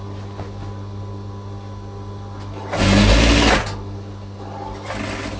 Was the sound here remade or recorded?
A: recorded